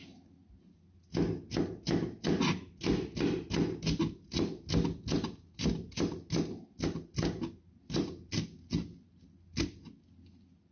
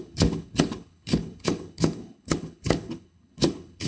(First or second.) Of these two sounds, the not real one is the second